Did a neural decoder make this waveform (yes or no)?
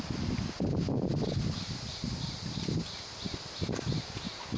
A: no